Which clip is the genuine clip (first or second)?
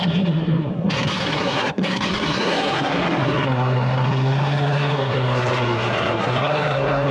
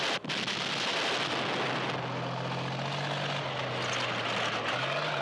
second